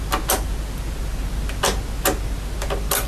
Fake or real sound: real